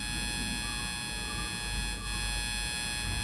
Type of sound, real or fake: real